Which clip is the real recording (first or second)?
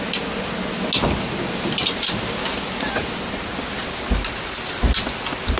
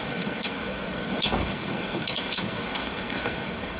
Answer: first